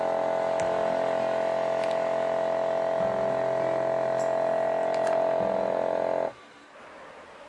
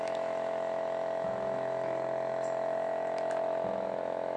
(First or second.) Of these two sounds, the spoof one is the second